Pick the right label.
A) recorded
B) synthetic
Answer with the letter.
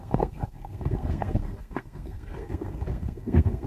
B